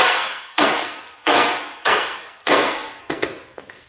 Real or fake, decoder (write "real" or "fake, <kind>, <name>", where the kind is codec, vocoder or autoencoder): fake, codec, SNAC